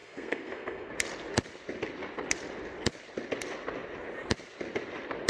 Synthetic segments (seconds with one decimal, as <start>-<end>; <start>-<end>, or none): 0.0-0.9